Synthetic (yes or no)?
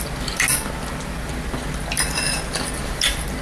no